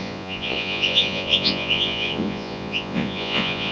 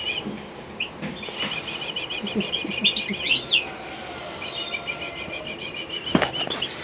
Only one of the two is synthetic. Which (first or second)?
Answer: first